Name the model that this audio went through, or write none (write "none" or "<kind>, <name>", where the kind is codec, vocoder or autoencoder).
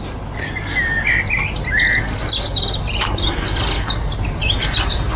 none